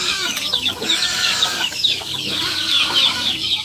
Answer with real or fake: fake